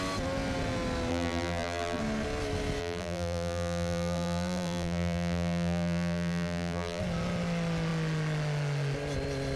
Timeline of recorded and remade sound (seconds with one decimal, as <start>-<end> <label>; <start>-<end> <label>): 0.0-1.1 recorded; 1.1-2.0 remade; 2.0-2.8 recorded; 2.8-7.0 remade; 7.0-9.6 recorded